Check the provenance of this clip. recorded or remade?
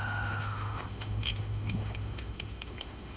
remade